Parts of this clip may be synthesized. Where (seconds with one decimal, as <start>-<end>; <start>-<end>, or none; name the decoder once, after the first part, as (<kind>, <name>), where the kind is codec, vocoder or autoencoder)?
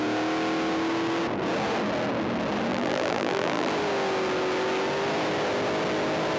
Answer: 2.7-3.7 (vocoder, BigVGAN v2)